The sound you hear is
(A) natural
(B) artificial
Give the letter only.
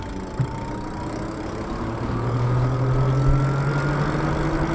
A